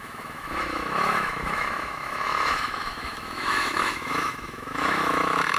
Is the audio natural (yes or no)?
no